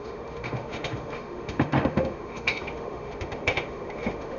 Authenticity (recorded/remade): remade